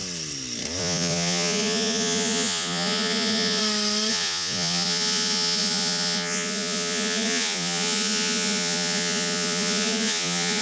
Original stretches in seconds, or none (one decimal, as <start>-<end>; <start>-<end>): 0.0-0.8; 3.6-4.1